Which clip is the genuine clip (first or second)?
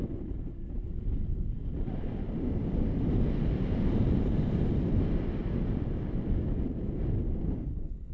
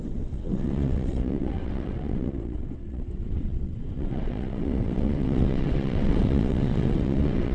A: first